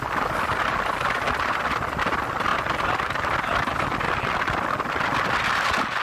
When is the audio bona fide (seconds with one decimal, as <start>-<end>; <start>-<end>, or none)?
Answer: 0.0-6.0